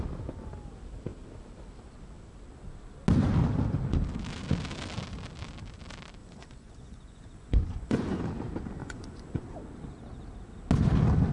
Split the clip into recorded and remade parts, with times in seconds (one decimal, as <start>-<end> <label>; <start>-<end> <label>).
0.0-6.2 recorded; 6.2-8.2 remade; 8.2-8.8 recorded; 8.8-9.4 remade; 9.4-11.3 recorded